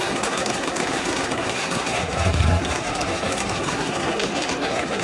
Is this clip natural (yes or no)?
no